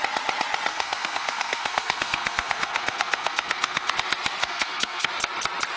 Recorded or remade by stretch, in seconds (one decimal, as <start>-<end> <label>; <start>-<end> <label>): 0.0-0.7 recorded; 0.7-3.9 remade; 3.9-4.4 recorded; 4.4-5.1 remade; 5.1-5.8 recorded